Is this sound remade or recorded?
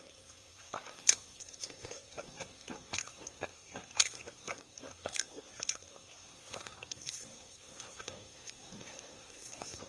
remade